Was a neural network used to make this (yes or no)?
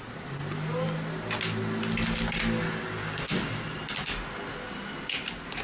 no